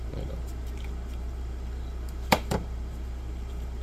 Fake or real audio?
fake